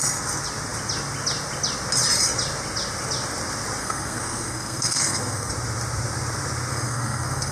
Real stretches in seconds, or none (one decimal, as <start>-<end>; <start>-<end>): 0.0-3.8; 5.5-6.7